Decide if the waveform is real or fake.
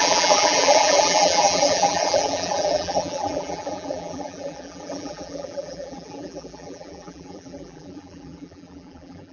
fake